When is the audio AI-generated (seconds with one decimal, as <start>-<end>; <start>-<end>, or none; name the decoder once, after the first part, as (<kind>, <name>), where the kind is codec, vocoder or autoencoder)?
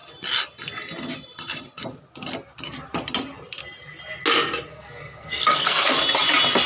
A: 4.7-5.9 (codec, SNAC)